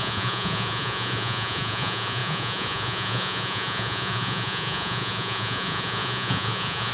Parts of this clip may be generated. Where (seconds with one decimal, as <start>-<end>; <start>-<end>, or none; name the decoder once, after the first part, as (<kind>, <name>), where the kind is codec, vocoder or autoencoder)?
0.0-6.9 (vocoder, Vocos)